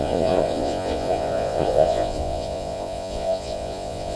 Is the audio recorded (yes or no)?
no